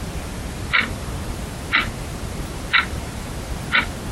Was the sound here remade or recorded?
recorded